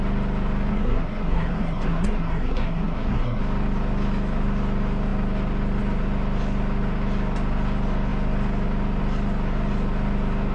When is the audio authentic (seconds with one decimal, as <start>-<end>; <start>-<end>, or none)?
0.0-0.7; 3.4-10.5